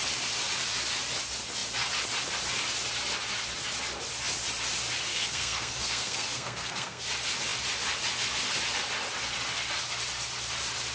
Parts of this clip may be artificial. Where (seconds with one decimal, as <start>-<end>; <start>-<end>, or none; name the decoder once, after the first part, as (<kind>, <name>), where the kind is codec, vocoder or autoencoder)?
5.1-7.0 (codec, SNAC)